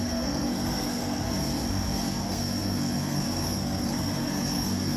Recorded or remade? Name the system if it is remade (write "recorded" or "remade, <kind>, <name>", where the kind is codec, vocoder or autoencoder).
remade, codec, SNAC